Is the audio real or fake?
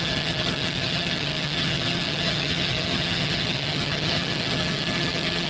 fake